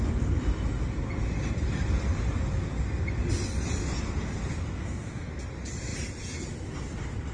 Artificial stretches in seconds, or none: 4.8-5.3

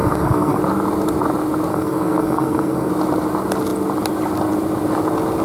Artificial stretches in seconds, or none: 0.0-0.6; 1.7-2.9

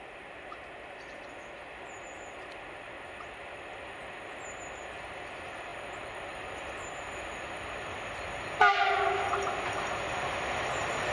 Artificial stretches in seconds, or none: none

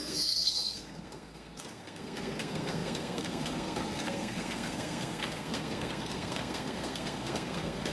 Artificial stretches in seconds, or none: 0.0-7.9